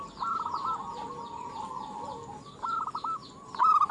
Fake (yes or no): no